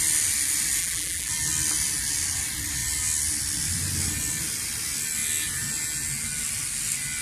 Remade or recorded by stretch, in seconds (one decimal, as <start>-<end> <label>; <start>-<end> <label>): 0.0-0.8 recorded; 0.8-1.3 remade; 1.3-7.2 recorded